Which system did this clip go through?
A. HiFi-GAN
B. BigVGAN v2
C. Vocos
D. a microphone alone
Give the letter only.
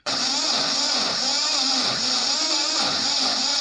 C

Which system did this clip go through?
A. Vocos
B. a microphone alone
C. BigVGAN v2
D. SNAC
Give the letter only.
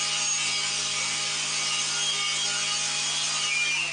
B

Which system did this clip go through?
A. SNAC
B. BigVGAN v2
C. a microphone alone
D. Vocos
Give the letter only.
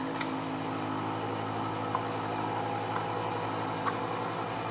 C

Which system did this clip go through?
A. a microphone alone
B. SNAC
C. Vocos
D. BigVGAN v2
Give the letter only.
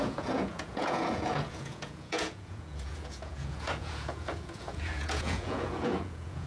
C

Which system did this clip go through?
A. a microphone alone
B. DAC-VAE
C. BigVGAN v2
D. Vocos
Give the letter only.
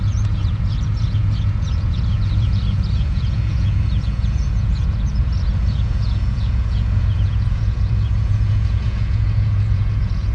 D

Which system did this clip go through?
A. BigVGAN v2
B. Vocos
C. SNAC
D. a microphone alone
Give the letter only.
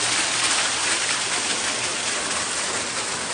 D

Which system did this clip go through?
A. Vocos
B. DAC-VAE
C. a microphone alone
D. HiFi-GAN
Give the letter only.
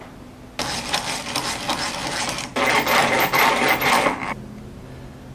C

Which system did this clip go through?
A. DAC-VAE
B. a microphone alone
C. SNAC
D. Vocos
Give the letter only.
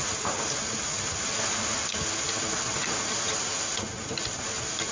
B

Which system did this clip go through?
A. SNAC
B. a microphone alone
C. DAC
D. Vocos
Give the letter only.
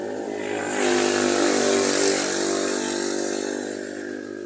B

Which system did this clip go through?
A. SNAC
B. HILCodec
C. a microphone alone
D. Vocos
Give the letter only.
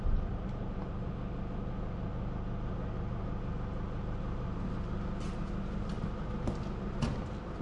C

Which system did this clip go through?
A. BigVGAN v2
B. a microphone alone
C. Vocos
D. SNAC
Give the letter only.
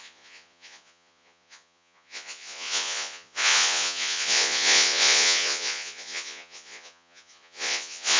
C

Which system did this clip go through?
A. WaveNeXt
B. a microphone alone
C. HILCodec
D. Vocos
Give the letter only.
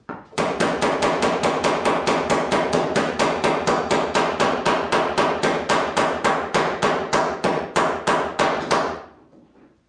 D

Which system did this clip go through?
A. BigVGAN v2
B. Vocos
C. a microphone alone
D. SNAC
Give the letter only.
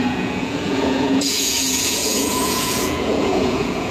B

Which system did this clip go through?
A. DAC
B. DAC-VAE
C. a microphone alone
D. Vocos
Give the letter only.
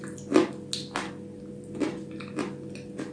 C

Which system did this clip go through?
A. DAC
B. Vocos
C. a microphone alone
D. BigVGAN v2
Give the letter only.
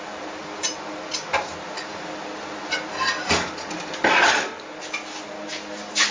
C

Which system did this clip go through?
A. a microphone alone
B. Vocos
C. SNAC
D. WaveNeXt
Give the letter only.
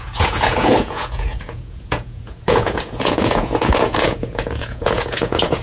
B